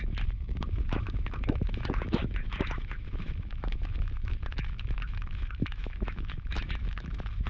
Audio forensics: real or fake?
fake